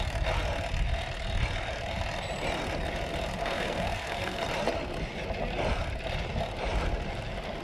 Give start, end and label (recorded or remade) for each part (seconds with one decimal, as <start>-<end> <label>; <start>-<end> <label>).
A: 0.0-3.4 recorded; 3.4-4.4 remade; 4.4-7.6 recorded